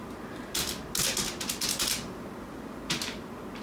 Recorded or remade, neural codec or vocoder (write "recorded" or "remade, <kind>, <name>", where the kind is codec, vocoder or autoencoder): recorded